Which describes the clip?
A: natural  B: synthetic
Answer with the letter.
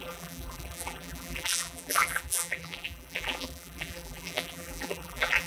B